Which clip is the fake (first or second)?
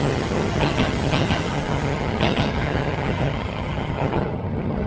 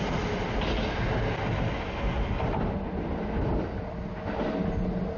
first